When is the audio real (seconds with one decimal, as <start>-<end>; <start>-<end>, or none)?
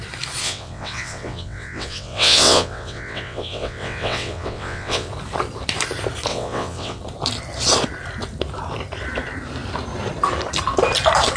0.0-0.4; 5.1-6.3; 7.0-11.4